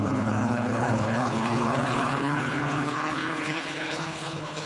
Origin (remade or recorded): remade